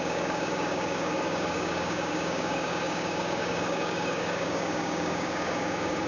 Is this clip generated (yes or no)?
yes